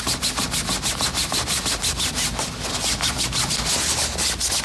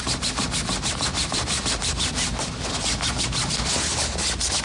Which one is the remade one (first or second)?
second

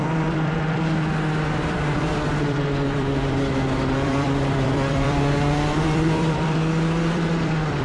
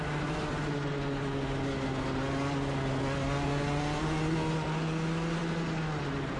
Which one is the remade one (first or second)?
first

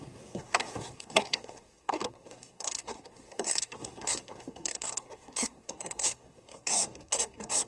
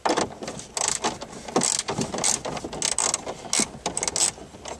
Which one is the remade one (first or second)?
first